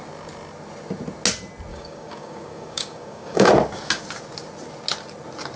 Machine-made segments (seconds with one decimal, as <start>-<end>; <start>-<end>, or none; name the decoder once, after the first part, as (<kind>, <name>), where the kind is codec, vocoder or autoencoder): 1.7-3.5 (codec, DAC)